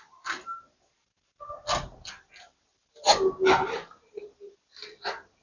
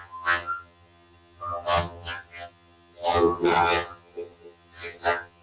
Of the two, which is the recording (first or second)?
first